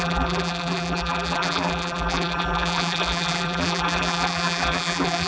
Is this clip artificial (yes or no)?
yes